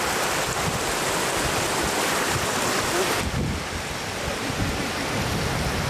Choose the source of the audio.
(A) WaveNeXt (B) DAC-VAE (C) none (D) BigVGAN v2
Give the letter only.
D